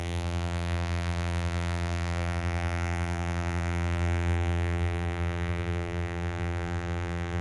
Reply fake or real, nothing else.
fake